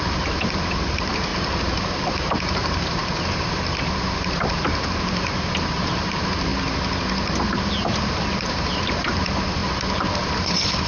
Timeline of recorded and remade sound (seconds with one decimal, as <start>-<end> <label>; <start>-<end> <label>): 0.0-1.3 remade; 1.3-1.8 recorded; 1.8-6.5 remade; 6.5-7.6 recorded; 7.6-10.9 remade